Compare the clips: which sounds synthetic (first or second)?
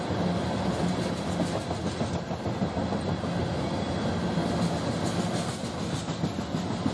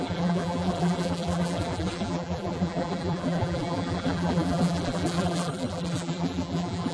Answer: second